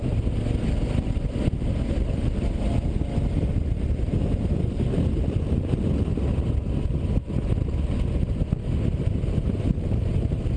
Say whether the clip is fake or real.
real